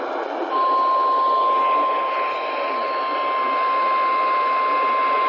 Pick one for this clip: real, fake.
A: real